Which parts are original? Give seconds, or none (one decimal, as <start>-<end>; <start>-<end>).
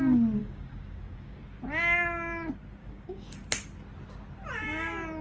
0.0-0.4; 1.4-2.8; 3.3-5.2